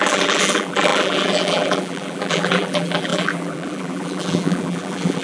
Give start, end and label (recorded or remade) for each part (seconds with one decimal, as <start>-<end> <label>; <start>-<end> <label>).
0.0-5.2 remade